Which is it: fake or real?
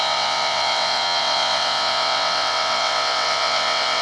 fake